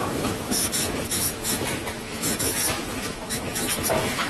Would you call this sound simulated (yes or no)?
yes